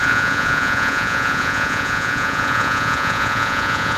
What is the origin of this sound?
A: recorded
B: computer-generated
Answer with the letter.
B